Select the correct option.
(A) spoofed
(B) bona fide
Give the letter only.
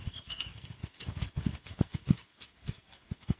A